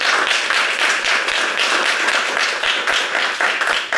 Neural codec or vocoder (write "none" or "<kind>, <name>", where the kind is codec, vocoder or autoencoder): none